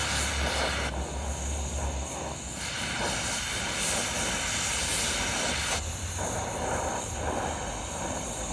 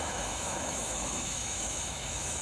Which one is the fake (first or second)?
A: second